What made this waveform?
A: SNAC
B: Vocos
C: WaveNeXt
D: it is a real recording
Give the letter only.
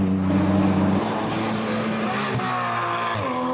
D